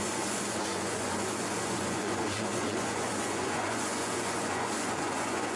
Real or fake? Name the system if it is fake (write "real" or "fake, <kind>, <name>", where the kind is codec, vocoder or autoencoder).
fake, vocoder, Vocos